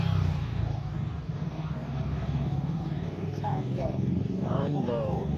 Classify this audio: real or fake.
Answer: fake